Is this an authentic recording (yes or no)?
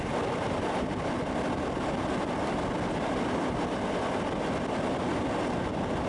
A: yes